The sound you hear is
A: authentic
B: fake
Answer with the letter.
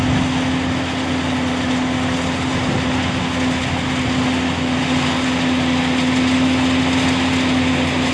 A